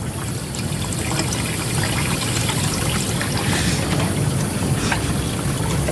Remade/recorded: recorded